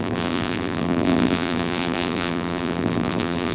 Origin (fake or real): fake